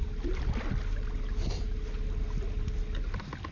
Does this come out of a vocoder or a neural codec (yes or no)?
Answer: no